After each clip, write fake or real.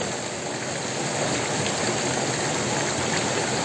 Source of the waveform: real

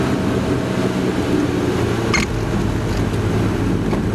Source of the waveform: real